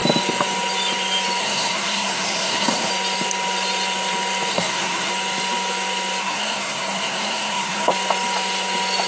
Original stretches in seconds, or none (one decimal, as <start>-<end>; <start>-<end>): 0.0-1.4; 2.9-4.5; 5.1-6.2; 7.9-9.1